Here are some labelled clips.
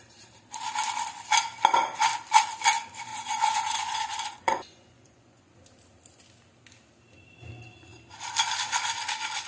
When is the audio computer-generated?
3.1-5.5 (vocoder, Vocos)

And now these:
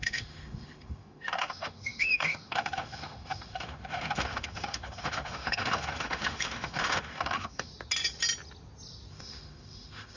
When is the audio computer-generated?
0.0-7.7 (autoencoder, DAC-VAE); 9.1-10.2